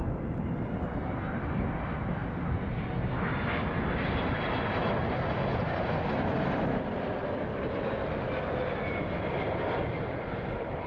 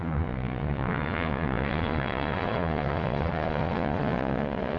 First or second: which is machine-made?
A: second